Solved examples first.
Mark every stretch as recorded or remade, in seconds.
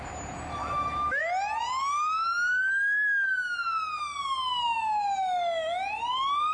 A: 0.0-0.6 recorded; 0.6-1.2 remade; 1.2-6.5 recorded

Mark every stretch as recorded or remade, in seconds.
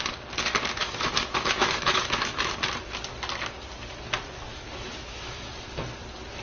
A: 0.0-0.8 recorded; 0.8-2.5 remade; 2.5-4.5 recorded; 4.5-5.5 remade; 5.5-6.4 recorded